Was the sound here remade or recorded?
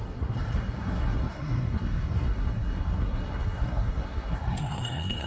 remade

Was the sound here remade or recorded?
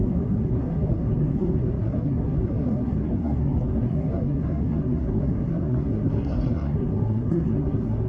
remade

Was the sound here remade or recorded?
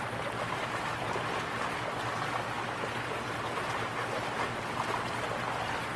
recorded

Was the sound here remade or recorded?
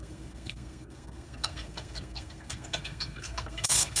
remade